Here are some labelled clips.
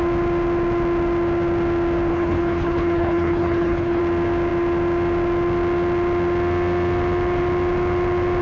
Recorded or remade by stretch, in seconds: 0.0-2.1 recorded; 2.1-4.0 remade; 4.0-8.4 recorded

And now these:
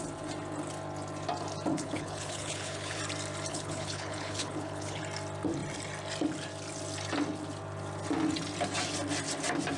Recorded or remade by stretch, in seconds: 0.0-1.7 recorded; 1.7-3.0 remade; 3.0-3.5 recorded; 3.5-5.0 remade; 5.0-9.8 recorded